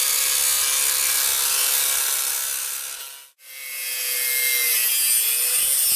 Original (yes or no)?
yes